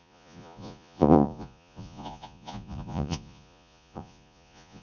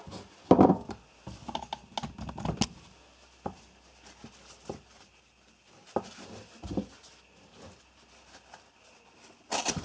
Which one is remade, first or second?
first